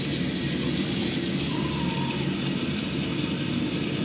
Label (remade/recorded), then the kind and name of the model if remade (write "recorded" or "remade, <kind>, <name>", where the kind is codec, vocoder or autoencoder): recorded